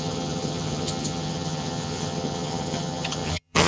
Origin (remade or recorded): remade